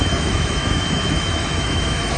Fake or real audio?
fake